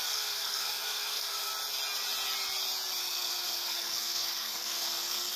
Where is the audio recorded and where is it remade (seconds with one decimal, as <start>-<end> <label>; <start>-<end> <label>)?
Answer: 0.0-1.5 remade; 1.5-3.0 recorded; 3.0-5.4 remade